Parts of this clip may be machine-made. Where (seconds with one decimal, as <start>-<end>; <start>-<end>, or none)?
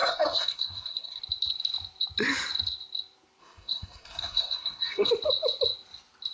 0.0-1.2; 3.4-5.1